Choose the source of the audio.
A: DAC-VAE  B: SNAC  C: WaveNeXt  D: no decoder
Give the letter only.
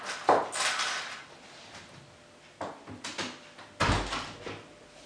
D